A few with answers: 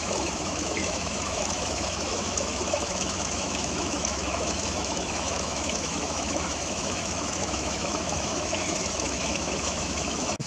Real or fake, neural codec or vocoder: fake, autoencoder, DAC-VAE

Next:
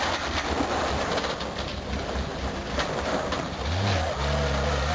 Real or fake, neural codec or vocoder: fake, vocoder, BigVGAN v2